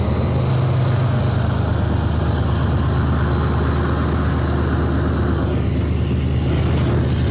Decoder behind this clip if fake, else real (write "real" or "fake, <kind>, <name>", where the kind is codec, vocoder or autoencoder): real